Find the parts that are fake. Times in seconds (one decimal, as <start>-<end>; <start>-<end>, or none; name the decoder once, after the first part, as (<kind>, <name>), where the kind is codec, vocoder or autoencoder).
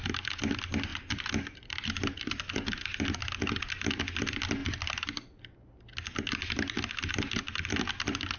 0.9-3.0 (vocoder, BigVGAN v2)